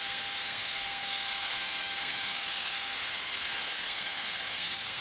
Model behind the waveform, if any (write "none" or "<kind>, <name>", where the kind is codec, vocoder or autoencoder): codec, SNAC